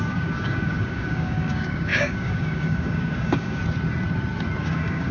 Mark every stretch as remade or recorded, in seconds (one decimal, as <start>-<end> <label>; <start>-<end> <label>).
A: 0.0-3.6 remade; 3.6-4.6 recorded; 4.6-5.1 remade